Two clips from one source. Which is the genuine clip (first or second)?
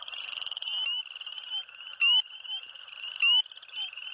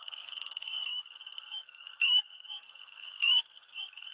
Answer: first